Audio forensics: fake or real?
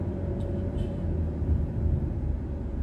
real